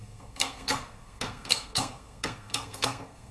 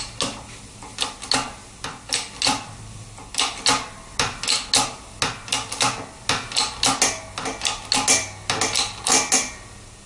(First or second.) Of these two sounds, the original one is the second